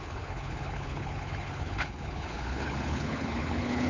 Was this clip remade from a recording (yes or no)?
yes